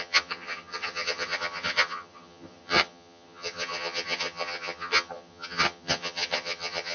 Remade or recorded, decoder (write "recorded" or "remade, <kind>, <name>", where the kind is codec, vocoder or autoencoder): remade, vocoder, HiFi-GAN